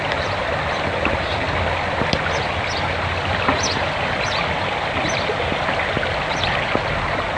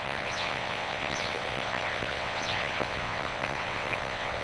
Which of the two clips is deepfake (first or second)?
second